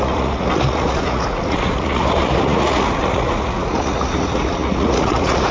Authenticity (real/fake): fake